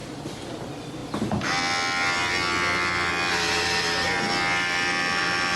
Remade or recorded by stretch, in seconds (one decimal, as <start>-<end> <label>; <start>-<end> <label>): 0.0-0.6 remade; 0.6-5.6 recorded